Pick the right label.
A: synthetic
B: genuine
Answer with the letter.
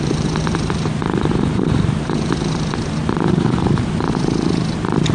A